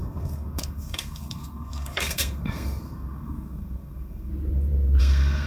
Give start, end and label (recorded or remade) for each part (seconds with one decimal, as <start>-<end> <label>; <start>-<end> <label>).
0.0-4.3 remade; 4.3-5.0 recorded; 5.0-5.5 remade